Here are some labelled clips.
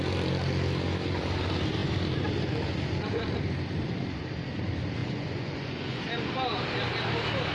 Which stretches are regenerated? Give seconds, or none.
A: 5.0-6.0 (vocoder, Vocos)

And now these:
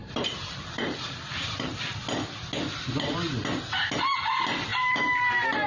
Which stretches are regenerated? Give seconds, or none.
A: 0.0-1.7 (vocoder, BigVGAN v2); 4.7-5.3

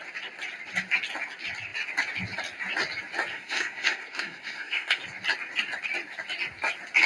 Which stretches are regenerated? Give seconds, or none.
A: 3.3-5.0 (codec, SNAC)

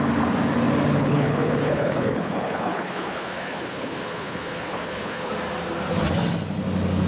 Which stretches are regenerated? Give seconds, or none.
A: 1.0-5.3 (codec, HILCodec)

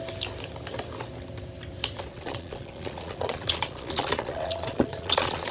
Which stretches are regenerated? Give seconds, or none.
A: 2.1-5.5 (vocoder, Vocos)

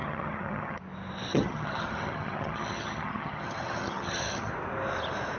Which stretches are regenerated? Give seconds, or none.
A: 0.0-0.8 (vocoder, HiFi-GAN); 1.3-4.5

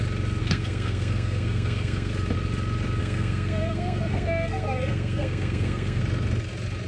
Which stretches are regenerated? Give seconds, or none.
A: 0.4-2.1 (codec, SNAC); 3.0-6.0

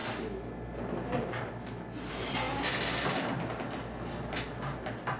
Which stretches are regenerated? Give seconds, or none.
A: none